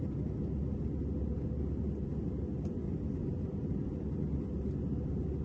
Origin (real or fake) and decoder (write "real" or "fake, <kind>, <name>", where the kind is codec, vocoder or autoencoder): real